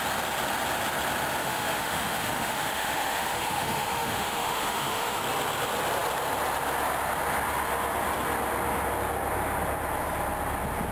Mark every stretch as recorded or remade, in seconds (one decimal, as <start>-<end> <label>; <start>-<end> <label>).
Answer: 0.0-1.4 recorded; 1.4-5.2 remade; 5.2-10.9 recorded